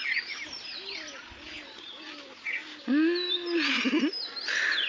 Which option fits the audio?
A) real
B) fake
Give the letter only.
A